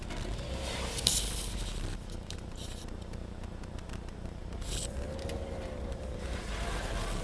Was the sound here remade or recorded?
recorded